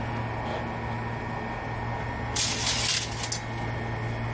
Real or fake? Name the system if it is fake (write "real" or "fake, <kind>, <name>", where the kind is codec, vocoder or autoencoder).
real